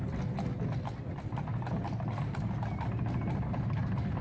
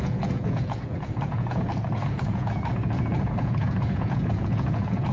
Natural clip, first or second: first